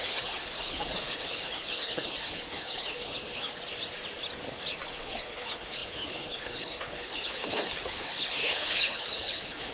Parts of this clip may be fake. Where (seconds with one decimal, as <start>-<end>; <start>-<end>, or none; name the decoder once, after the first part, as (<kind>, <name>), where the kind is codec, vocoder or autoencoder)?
0.0-3.5 (codec, HILCodec); 5.0-9.7